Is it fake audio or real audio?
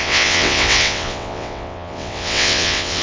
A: fake